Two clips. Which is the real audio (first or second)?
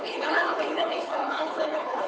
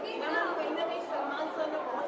second